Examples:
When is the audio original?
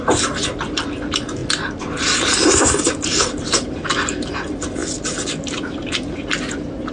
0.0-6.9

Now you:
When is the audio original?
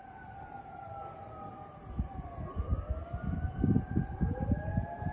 0.0-5.1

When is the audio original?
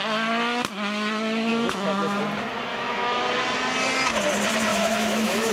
0.0-1.5; 2.2-2.7; 3.2-4.7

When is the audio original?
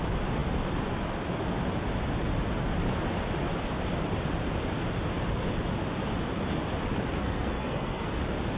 0.0-7.2; 8.1-8.6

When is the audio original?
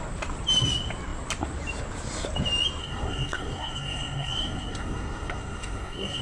0.0-2.8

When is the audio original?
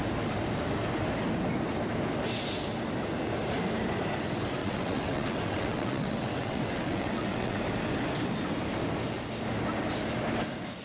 0.0-4.6; 7.6-10.8